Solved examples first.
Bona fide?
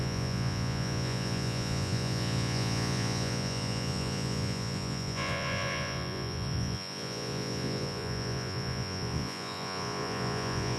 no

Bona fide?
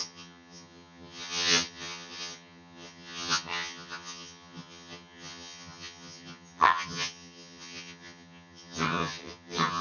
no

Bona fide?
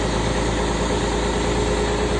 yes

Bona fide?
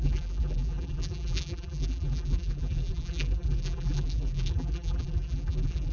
no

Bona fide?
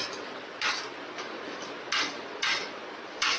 yes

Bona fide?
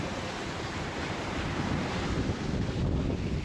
yes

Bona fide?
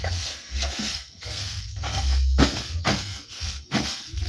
no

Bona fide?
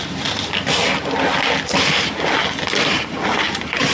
yes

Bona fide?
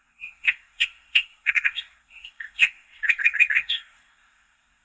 no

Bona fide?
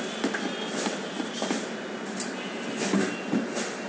yes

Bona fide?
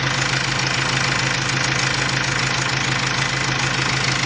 yes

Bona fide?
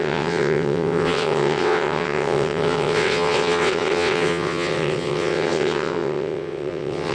no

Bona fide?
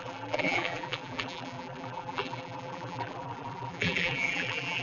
no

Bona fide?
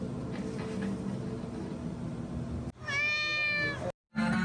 yes